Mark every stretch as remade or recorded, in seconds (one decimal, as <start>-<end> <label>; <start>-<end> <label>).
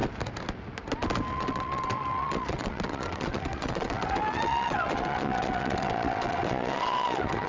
0.0-1.3 recorded; 1.3-7.5 remade